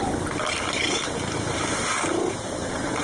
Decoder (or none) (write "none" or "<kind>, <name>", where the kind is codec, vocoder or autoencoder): vocoder, BigVGAN v2